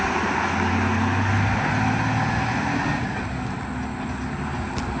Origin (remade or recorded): recorded